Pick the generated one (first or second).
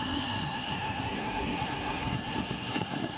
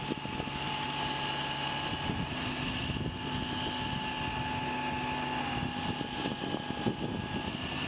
first